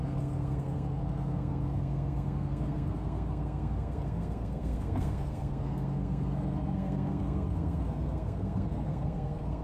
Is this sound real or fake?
fake